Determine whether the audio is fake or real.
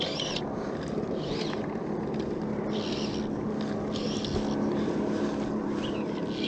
real